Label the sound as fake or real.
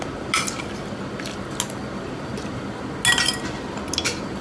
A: real